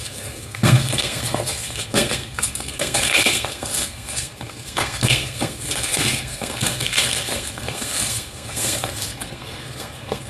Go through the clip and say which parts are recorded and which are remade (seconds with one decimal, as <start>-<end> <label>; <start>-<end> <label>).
0.0-10.3 remade